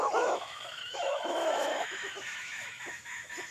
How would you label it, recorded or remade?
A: remade